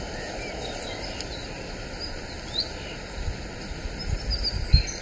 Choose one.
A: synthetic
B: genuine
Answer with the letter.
B